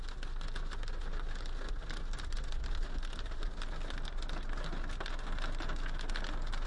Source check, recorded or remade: recorded